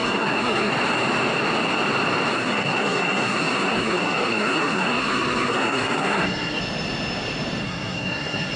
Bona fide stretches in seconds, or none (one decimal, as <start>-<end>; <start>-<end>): 0.7-2.3; 6.6-7.6